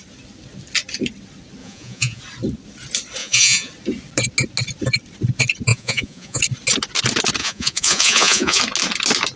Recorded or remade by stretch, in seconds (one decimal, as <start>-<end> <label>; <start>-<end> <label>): 0.0-1.6 recorded; 1.6-2.2 remade; 2.2-3.2 recorded; 3.2-3.7 remade; 3.7-5.7 recorded; 5.7-6.4 remade; 6.4-7.4 recorded; 7.4-8.6 remade; 8.6-9.4 recorded

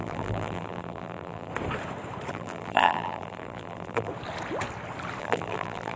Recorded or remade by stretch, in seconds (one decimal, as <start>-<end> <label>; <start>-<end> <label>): 0.0-1.5 remade; 1.5-2.3 recorded; 2.3-4.1 remade; 4.1-5.2 recorded; 5.2-6.0 remade

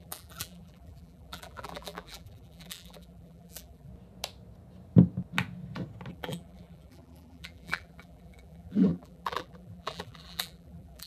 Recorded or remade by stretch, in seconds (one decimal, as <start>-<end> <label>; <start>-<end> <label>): 0.0-3.9 remade; 3.9-6.1 recorded; 6.1-11.1 remade

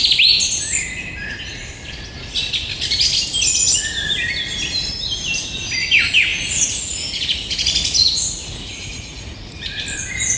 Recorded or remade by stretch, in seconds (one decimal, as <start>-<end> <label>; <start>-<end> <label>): 0.0-6.3 recorded; 6.3-9.8 remade; 9.8-10.4 recorded

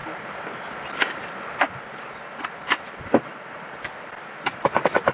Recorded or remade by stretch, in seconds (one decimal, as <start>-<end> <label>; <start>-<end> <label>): 0.0-5.1 recorded